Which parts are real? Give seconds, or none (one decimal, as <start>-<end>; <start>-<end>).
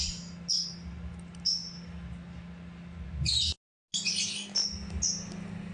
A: 0.0-5.7